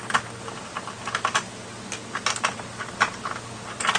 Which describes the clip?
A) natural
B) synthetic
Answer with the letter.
A